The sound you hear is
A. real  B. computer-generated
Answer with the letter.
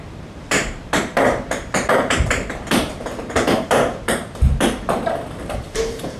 B